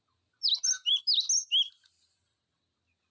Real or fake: real